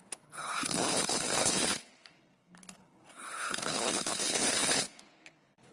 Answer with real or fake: fake